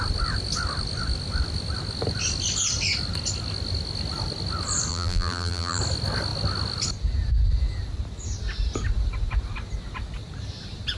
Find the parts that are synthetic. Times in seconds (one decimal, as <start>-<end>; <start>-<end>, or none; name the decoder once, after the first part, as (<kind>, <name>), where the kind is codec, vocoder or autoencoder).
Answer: 4.9-5.8 (vocoder, BigVGAN v2)